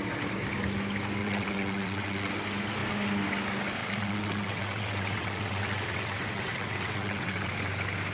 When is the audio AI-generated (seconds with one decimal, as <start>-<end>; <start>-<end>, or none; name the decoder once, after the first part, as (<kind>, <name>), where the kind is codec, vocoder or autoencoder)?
1.2-2.3 (vocoder, WaveNeXt); 3.8-7.5